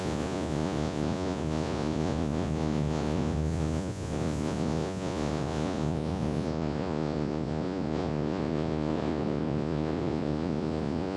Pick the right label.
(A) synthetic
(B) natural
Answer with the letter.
A